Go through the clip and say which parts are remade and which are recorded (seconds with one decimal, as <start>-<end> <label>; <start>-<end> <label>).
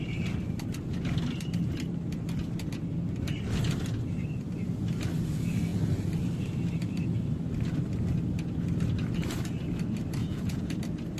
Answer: 0.0-10.2 recorded; 10.2-10.7 remade; 10.7-11.2 recorded